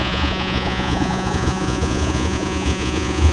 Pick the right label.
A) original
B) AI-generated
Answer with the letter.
B